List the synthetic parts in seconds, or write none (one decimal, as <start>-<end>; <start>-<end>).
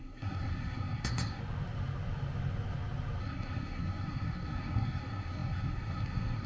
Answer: 0.0-1.4; 3.2-6.5